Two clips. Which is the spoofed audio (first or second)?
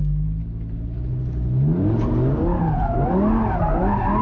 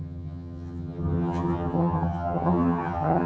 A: second